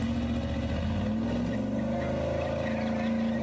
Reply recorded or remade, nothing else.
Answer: recorded